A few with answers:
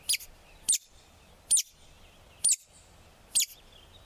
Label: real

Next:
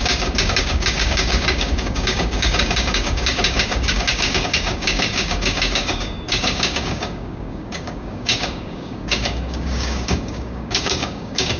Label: fake